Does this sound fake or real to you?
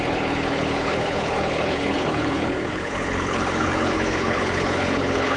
fake